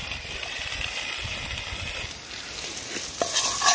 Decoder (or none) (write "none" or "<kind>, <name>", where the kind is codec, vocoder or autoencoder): none